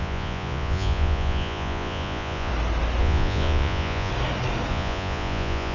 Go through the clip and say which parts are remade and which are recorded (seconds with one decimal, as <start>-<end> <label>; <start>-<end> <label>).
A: 0.0-2.5 remade; 2.5-3.0 recorded; 3.0-4.1 remade; 4.1-4.7 recorded; 4.7-5.7 remade